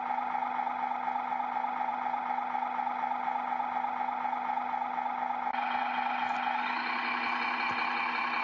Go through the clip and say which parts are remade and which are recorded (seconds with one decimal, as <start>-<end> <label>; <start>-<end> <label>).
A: 0.0-8.4 recorded